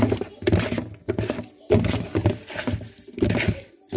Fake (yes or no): no